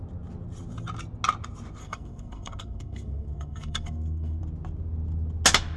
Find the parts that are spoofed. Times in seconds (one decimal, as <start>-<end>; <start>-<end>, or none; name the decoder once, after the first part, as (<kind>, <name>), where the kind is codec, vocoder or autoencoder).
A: 1.8-4.4 (codec, SNAC)